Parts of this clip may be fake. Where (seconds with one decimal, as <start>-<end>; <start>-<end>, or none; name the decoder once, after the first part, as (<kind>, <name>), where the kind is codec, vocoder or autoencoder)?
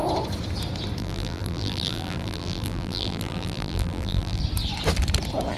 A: 1.0-4.4 (vocoder, BigVGAN v2)